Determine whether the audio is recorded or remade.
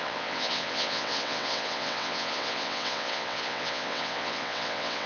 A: remade